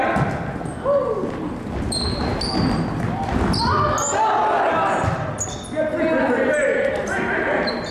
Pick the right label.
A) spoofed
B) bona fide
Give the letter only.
B